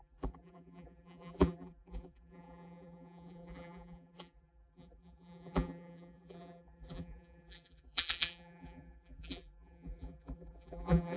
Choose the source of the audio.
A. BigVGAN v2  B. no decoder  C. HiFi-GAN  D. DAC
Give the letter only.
A